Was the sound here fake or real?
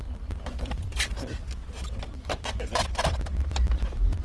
fake